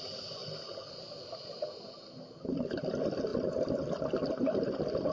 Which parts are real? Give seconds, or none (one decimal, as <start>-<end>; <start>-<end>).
0.0-5.1